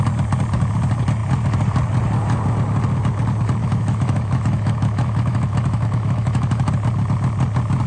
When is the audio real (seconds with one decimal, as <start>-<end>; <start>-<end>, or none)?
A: 0.0-3.6; 6.7-7.9